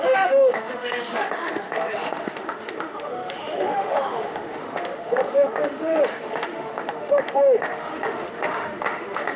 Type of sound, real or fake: fake